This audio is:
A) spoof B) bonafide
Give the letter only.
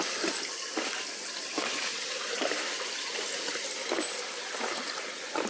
B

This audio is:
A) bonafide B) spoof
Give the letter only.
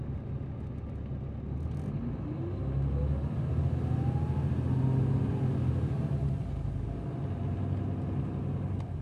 A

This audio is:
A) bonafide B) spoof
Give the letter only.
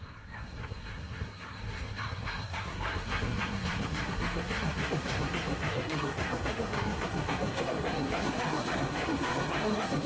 B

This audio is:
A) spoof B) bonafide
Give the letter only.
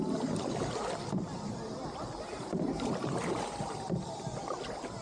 B